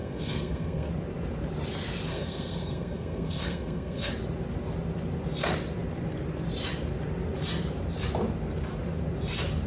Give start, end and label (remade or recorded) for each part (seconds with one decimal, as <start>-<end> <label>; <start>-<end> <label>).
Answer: 0.0-0.9 remade; 0.9-2.1 recorded; 2.1-4.1 remade; 4.1-9.7 recorded